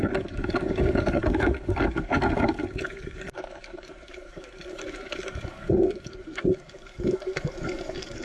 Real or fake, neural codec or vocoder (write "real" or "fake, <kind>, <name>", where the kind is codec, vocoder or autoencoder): fake, codec, DAC